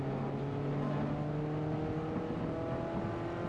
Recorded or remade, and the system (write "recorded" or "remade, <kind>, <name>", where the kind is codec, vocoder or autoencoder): recorded